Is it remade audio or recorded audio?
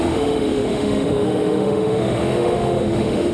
remade